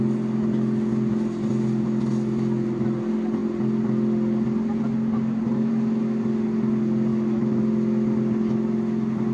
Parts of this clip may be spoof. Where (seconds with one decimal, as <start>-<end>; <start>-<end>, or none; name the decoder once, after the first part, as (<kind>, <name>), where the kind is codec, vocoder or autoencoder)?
7.1-7.6 (autoencoder, DAC-VAE)

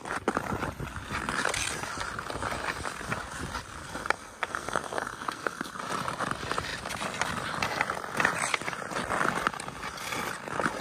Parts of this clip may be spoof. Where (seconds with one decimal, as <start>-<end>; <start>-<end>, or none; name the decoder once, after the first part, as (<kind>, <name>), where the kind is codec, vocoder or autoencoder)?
3.8-5.8 (codec, SNAC)

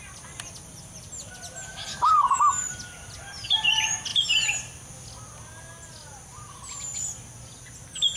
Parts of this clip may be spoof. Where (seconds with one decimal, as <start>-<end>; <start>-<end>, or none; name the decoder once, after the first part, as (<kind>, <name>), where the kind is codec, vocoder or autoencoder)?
none